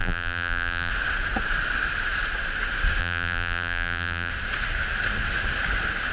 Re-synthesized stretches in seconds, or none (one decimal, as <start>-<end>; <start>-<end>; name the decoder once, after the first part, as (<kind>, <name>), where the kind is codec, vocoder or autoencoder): 0.0-0.9 (vocoder, BigVGAN v2); 3.0-4.3